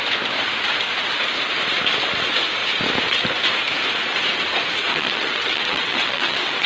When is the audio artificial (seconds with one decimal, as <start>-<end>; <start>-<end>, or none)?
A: 4.9-6.7